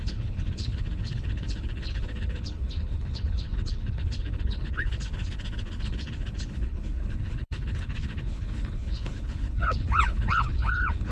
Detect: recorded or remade remade